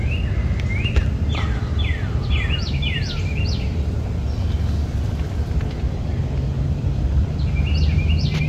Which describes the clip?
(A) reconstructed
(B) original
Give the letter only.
B